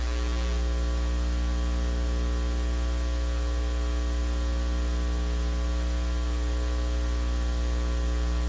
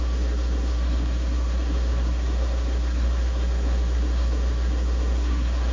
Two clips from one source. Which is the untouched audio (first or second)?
first